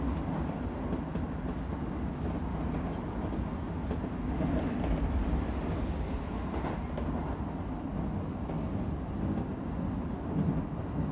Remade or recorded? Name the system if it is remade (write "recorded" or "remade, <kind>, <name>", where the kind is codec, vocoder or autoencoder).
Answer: recorded